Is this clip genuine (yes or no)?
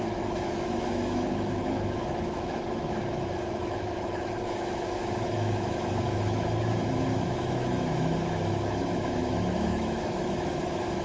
no